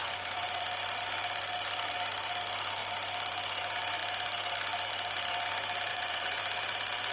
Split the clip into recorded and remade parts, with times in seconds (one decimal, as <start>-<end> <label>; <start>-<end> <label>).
0.0-0.7 remade; 0.7-5.9 recorded; 5.9-6.4 remade; 6.4-7.1 recorded